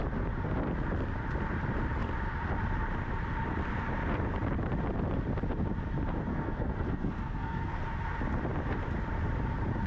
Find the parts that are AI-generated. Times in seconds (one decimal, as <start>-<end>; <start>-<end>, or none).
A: 6.3-7.8